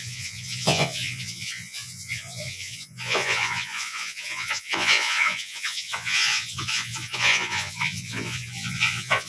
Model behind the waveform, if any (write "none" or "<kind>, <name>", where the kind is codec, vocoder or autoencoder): vocoder, Vocos